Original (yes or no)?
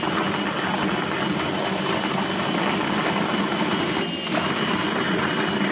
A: yes